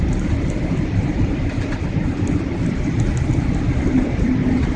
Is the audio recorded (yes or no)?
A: no